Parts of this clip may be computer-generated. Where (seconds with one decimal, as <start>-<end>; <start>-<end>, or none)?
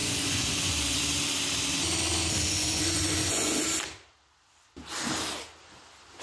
0.0-1.0; 2.4-3.6